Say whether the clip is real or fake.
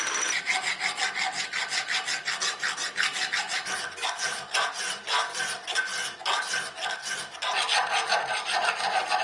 real